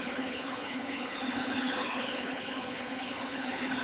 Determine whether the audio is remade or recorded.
remade